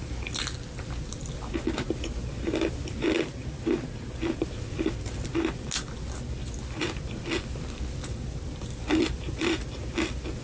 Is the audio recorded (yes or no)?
yes